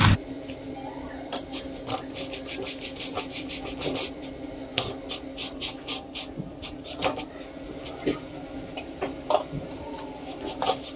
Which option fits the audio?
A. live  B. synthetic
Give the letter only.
A